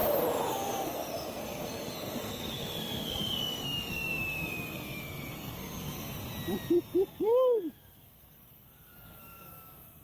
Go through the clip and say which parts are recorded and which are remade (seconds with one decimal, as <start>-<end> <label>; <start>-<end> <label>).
0.0-0.5 recorded; 0.5-6.2 remade; 6.2-7.1 recorded; 7.1-10.0 remade